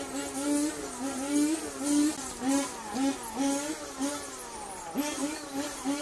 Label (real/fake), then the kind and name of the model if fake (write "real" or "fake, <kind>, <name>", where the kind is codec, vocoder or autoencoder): real